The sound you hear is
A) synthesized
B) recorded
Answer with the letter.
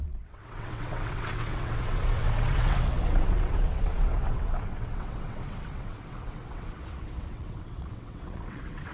A